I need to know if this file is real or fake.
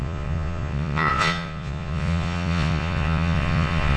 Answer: fake